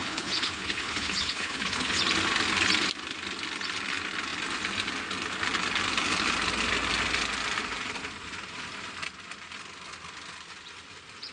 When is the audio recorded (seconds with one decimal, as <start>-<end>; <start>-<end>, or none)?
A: 2.0-11.3